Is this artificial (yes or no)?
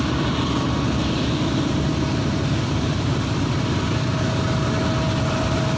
no